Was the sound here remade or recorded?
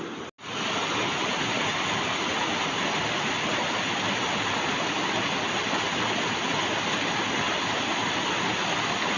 recorded